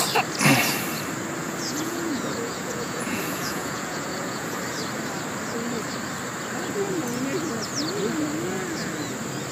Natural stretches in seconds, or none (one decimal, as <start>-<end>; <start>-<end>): 0.0-1.4; 4.6-9.5